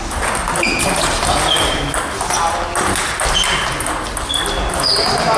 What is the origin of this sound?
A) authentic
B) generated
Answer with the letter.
A